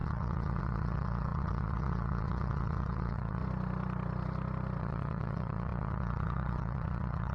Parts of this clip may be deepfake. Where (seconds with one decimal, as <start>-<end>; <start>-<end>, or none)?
0.0-3.4; 4.8-7.3